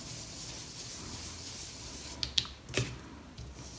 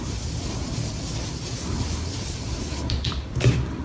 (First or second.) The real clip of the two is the first